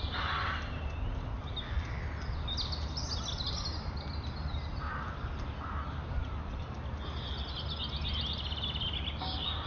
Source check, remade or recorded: recorded